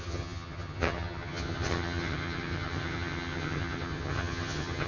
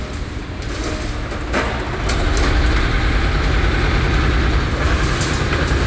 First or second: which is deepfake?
first